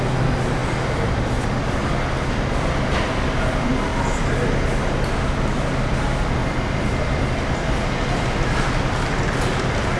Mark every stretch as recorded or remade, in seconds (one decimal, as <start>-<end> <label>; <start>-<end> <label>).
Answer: 0.0-10.0 recorded